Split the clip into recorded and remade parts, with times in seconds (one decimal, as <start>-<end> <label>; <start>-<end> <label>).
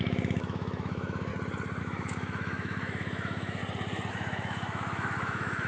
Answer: 0.0-1.3 remade; 1.3-1.8 recorded; 1.8-3.6 remade; 3.6-4.1 recorded; 4.1-5.7 remade